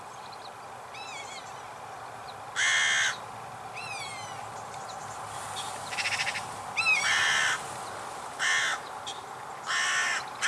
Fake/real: real